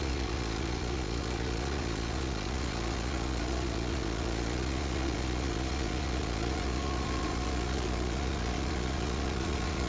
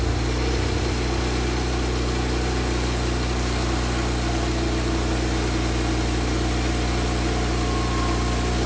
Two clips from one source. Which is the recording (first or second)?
second